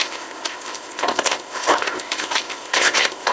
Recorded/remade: remade